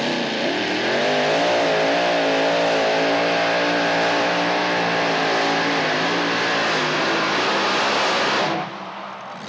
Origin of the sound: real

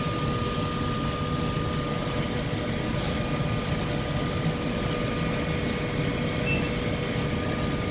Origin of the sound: real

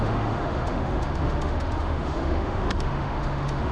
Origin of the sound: fake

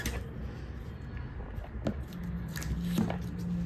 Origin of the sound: real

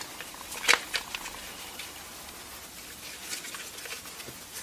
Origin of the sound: real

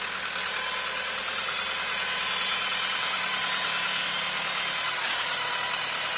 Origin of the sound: real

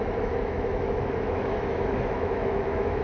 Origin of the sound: fake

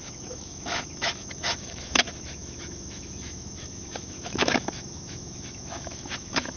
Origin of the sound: fake